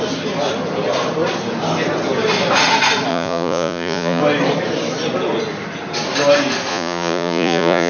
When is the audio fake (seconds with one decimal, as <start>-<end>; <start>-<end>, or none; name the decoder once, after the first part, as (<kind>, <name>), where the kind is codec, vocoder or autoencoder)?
3.1-4.2 (vocoder, Vocos); 6.7-7.9